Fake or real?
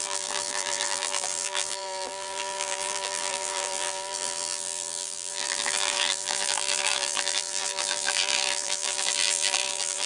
fake